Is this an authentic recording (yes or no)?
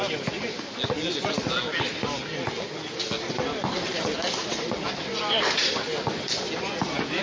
yes